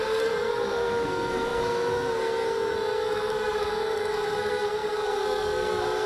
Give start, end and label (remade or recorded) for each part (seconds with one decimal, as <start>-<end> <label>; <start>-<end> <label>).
0.0-6.1 remade